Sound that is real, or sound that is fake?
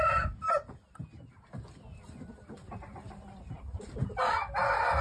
real